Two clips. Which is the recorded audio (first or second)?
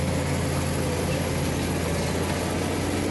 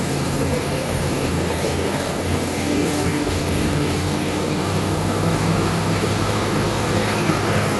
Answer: first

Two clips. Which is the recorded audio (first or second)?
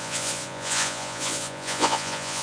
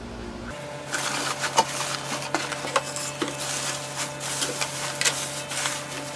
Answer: second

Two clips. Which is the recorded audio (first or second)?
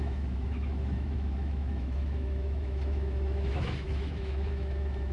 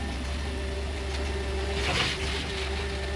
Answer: second